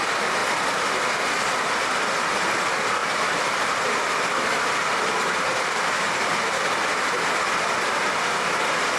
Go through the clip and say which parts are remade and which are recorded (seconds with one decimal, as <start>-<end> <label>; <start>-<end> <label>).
0.0-9.0 recorded